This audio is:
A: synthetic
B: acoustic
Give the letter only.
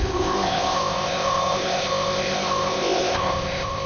A